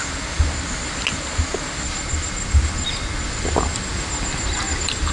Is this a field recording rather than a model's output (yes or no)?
yes